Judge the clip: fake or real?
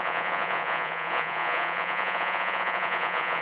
fake